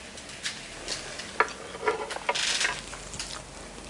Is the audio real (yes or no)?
yes